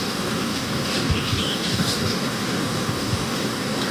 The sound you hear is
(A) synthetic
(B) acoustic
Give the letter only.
A